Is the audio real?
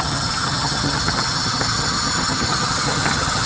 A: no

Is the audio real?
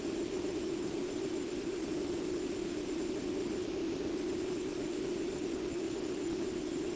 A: yes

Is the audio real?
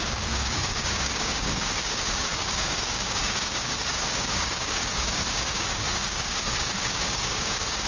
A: no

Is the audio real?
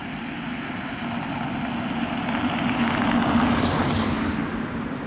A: yes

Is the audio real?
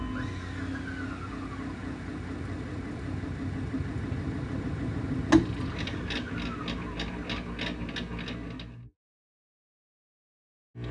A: yes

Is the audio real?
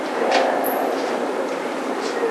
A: no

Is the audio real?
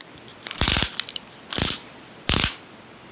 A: yes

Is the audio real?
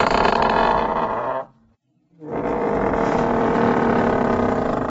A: yes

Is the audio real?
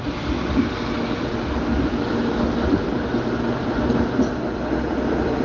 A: yes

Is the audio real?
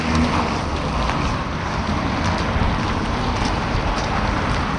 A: yes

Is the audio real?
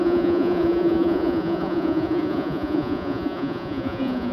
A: no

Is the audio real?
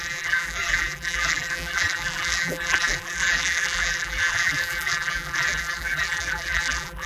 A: no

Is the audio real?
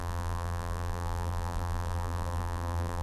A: no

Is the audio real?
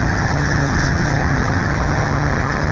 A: no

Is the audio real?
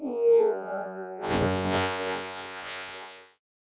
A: no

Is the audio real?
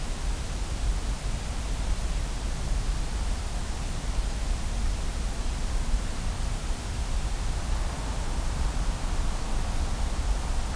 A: yes